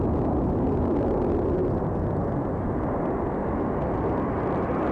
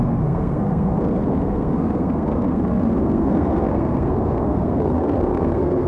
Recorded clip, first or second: first